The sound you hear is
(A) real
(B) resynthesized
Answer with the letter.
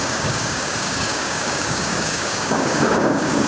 B